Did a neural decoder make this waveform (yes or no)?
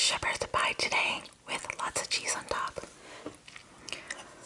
no